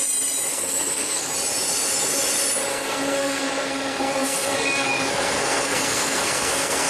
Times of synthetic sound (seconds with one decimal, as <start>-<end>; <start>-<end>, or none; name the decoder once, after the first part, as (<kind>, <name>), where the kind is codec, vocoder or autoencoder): 0.5-1.3 (codec, SNAC); 2.7-6.9